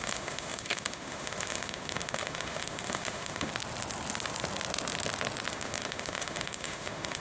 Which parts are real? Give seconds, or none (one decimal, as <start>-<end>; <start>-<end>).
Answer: 3.5-5.5